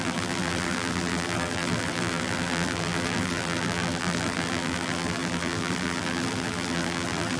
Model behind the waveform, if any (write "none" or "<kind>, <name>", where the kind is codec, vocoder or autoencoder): vocoder, BigVGAN v2